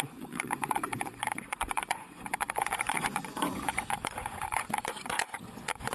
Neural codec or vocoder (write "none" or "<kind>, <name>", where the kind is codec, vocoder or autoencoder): vocoder, Vocos